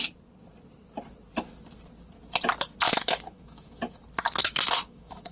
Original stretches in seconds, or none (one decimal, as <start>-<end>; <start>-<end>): 0.0-2.9; 4.0-4.4